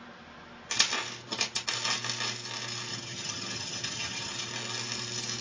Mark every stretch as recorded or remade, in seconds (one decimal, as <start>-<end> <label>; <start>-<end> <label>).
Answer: 0.0-2.9 recorded; 2.9-4.5 remade; 4.5-5.4 recorded